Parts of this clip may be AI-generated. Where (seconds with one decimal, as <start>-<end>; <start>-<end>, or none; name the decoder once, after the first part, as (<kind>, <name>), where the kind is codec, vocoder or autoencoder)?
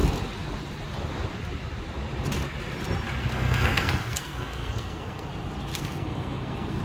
3.2-5.3 (codec, SNAC); 5.7-6.8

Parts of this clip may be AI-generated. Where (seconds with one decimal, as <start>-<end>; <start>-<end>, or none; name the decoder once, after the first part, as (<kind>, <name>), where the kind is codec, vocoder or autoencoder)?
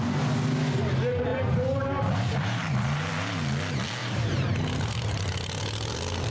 1.3-3.1 (vocoder, BigVGAN v2); 4.0-5.3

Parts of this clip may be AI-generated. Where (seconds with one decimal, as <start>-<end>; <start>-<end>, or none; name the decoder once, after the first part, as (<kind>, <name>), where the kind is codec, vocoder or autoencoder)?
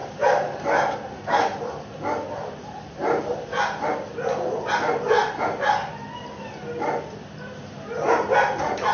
none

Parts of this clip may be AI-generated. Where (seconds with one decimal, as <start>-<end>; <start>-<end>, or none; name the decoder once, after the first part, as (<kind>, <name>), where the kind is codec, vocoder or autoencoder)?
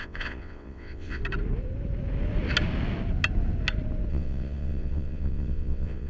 0.0-1.2 (vocoder, WaveNeXt); 4.1-6.1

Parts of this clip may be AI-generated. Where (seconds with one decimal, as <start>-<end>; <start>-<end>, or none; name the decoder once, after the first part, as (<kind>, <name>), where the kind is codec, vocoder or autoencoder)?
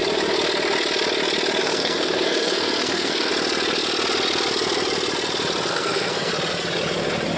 1.6-3.3 (codec, SNAC); 5.7-6.3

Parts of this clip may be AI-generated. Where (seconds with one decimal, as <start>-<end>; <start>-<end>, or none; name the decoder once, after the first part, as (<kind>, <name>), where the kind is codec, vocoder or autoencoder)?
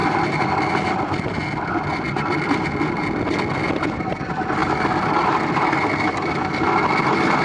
0.0-3.0 (vocoder, BigVGAN v2)